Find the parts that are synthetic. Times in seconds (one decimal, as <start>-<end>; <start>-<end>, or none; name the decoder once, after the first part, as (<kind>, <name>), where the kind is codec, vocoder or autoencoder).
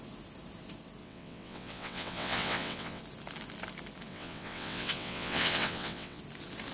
1.0-3.0 (vocoder, WaveNeXt); 4.1-6.2